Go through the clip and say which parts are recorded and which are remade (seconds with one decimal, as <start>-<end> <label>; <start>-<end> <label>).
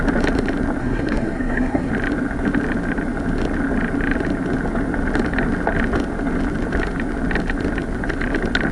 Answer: 0.0-0.8 recorded; 0.8-1.9 remade; 1.9-8.7 recorded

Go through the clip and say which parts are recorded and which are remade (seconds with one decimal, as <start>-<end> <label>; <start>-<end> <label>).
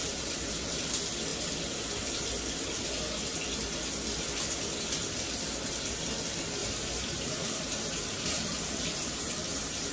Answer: 0.0-0.9 remade; 0.9-6.6 recorded; 6.6-9.3 remade; 9.3-9.9 recorded